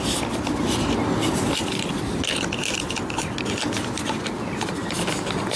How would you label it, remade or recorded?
recorded